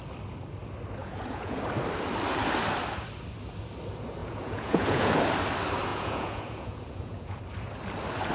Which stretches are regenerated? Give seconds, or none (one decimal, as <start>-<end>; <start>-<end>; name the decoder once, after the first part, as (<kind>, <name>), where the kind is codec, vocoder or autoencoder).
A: 1.0-1.6 (vocoder, Vocos); 4.2-5.1; 5.9-7.4